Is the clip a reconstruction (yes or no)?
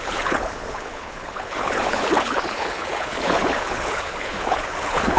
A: yes